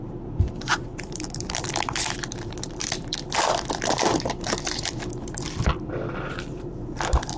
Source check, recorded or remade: remade